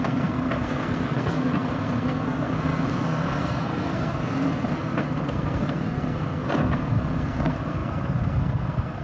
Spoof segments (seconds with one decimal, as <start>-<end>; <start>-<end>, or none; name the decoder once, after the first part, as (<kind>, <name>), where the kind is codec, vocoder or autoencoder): 0.0-9.0 (codec, SNAC)